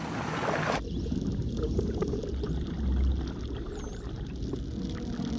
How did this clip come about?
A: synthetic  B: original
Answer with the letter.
B